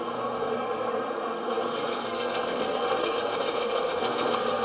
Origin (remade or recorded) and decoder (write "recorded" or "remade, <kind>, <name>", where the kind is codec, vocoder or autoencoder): remade, codec, SNAC